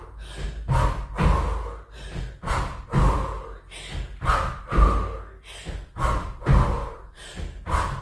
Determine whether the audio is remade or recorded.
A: recorded